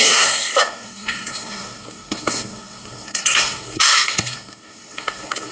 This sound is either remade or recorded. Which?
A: remade